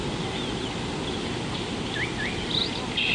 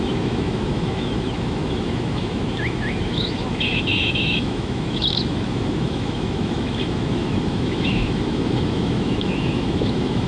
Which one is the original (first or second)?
first